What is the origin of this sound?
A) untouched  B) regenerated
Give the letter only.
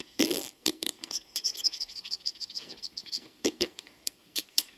B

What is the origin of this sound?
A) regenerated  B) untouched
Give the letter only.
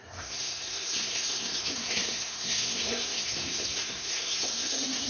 A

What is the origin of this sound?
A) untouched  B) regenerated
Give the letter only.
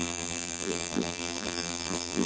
B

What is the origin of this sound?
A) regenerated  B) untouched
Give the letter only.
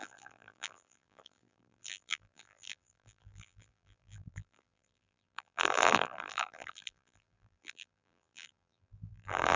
A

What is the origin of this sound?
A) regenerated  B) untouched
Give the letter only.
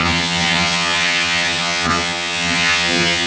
A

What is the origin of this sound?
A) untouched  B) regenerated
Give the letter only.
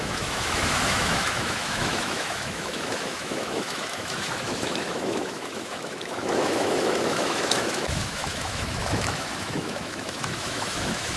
B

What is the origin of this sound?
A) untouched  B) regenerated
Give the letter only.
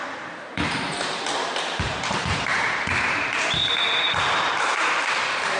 B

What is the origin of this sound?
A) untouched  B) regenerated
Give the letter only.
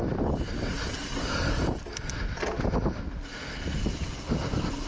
A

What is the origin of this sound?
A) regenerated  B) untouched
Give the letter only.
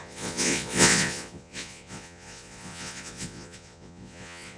A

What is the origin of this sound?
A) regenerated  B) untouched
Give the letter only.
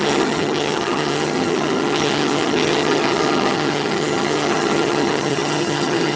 A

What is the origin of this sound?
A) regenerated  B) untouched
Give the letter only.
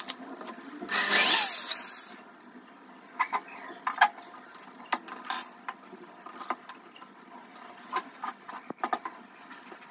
B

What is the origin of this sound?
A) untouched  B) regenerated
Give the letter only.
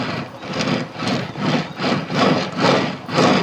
A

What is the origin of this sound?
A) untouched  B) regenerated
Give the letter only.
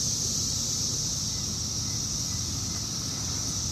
A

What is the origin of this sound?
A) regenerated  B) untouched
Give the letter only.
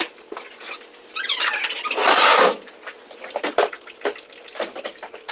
B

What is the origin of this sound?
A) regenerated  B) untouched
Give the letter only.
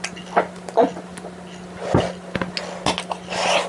B